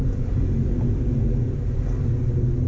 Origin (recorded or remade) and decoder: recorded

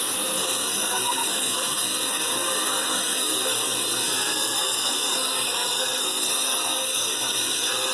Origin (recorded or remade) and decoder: remade, codec, SNAC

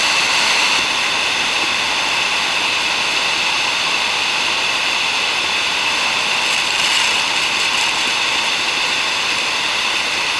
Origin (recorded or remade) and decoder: recorded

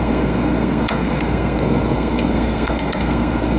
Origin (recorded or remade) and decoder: remade, codec, SNAC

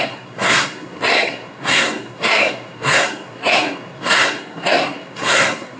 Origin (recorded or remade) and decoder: remade, codec, SNAC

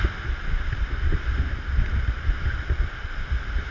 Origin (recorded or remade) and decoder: recorded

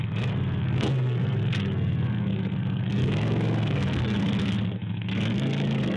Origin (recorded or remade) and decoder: remade, codec, SNAC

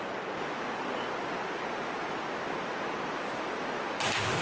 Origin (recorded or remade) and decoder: recorded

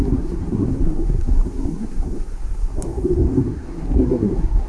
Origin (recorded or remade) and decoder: remade, codec, SNAC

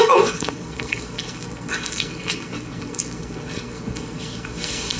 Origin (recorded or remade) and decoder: remade, codec, SNAC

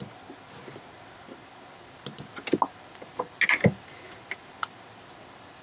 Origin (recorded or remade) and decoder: recorded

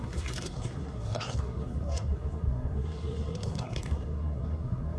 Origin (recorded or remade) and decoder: remade, codec, SNAC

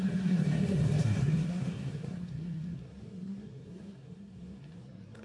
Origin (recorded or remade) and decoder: remade, codec, SNAC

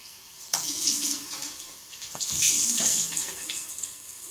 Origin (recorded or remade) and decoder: remade, codec, SNAC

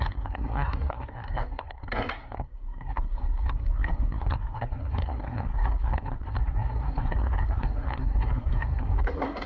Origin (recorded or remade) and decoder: remade, codec, SNAC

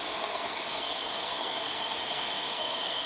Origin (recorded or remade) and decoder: remade, codec, SNAC